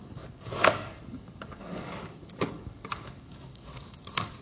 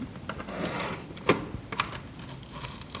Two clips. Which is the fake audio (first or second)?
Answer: first